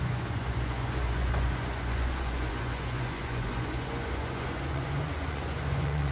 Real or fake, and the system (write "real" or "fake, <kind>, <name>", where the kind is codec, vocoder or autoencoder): fake, vocoder, Vocos